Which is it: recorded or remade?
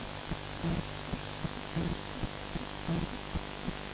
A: remade